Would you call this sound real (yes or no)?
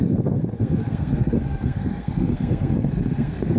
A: no